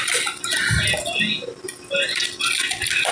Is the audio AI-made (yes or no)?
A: no